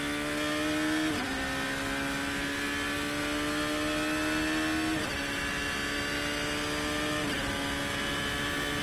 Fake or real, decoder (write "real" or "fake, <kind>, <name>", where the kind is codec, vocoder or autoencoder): real